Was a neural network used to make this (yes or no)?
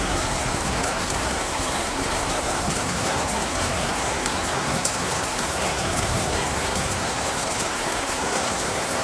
yes